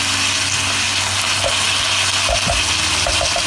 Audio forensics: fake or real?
real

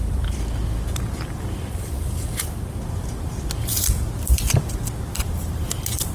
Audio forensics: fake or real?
fake